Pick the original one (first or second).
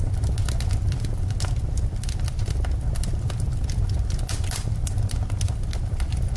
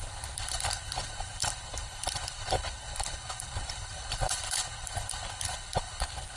first